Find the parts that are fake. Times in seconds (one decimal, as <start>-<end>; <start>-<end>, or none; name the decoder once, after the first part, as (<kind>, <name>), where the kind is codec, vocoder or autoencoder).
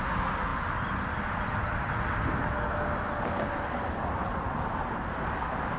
none